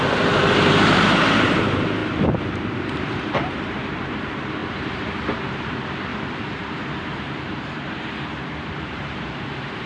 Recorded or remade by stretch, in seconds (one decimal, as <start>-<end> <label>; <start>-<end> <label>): 0.0-6.1 remade; 6.1-7.0 recorded; 7.0-9.9 remade